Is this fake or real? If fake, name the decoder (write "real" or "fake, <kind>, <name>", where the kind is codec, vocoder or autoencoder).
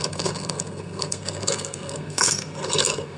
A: fake, codec, SNAC